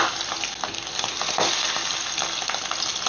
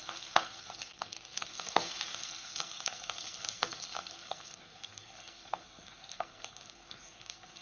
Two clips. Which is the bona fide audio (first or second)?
first